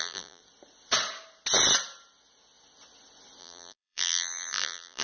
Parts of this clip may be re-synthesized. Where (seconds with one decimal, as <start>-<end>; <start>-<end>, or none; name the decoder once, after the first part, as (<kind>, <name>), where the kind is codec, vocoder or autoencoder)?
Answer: 0.0-0.4 (vocoder, BigVGAN v2); 3.4-5.0